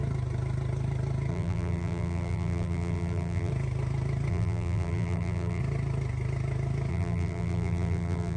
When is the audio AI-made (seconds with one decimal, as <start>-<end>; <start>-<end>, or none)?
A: 1.3-3.5; 4.3-5.6; 6.9-8.4